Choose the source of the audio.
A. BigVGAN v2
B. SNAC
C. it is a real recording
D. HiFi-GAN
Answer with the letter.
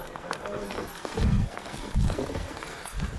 B